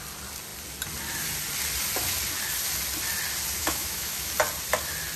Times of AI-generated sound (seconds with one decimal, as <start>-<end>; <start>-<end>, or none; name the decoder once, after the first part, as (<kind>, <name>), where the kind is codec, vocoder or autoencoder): 3.6-4.3 (autoencoder, DAC-VAE)